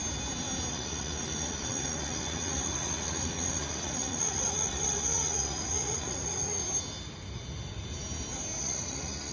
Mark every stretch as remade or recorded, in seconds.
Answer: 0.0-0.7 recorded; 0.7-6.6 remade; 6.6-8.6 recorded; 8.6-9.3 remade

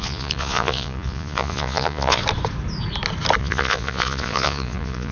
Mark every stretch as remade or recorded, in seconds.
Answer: 0.0-2.2 remade; 2.2-3.4 recorded; 3.4-5.1 remade

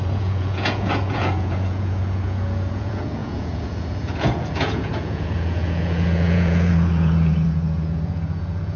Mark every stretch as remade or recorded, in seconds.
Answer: 0.0-8.8 remade

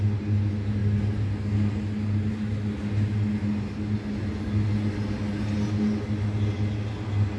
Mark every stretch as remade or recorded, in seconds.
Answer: 0.0-7.4 recorded

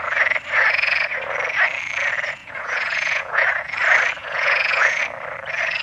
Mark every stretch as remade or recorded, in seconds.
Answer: 0.0-2.4 recorded; 2.4-3.5 remade; 3.5-4.2 recorded; 4.2-5.0 remade; 5.0-5.8 recorded

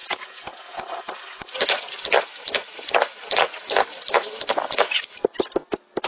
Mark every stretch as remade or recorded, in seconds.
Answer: 0.0-0.8 remade; 0.8-6.1 recorded

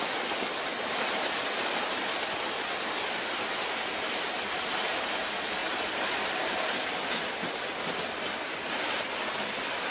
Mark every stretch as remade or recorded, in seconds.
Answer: 0.0-9.9 recorded

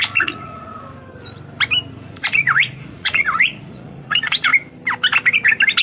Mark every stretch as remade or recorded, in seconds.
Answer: 0.0-0.7 remade; 0.7-1.9 recorded; 1.9-4.5 remade; 4.5-5.8 recorded